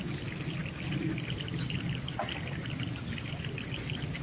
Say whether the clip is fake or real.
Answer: real